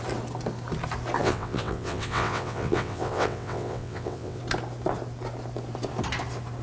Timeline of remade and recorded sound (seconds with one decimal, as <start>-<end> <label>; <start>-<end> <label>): 0.0-1.2 recorded; 1.2-4.4 remade; 4.4-6.6 recorded